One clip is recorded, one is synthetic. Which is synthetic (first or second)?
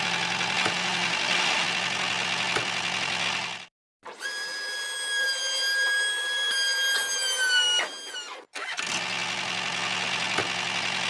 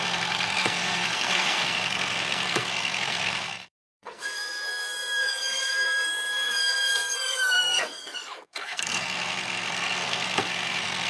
second